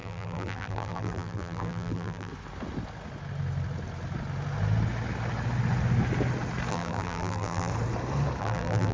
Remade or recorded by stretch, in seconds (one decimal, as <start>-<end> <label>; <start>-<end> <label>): 0.0-2.3 remade; 2.3-6.7 recorded; 6.7-7.7 remade; 7.7-8.4 recorded; 8.4-8.9 remade